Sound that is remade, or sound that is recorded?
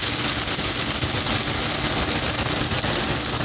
recorded